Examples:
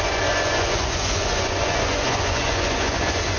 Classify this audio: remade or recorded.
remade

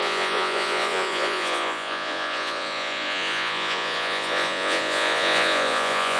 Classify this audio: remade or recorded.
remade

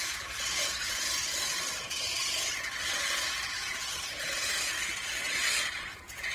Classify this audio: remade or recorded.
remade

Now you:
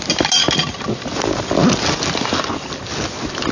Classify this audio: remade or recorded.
recorded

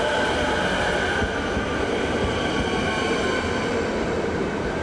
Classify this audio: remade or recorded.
recorded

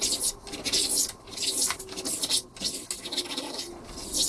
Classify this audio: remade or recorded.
recorded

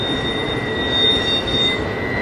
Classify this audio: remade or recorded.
recorded